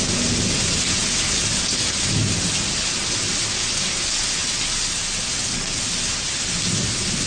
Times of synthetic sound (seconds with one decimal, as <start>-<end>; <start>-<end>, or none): none